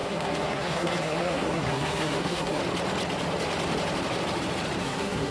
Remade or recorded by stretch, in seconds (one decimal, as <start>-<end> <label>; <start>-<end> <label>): 0.0-2.6 remade; 2.6-4.8 recorded; 4.8-5.3 remade